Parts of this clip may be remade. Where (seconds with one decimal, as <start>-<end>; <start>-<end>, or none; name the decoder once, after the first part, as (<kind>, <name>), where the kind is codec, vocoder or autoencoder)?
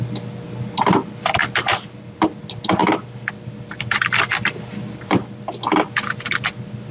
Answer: 2.8-6.9 (vocoder, BigVGAN v2)